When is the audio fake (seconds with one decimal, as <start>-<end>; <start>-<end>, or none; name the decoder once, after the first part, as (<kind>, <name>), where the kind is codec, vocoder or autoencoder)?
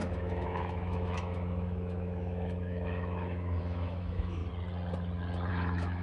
0.0-4.4 (autoencoder, DAC-VAE); 5.5-6.0